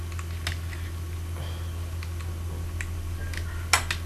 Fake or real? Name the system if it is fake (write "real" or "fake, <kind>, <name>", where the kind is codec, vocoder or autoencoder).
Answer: real